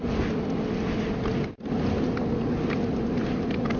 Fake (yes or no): no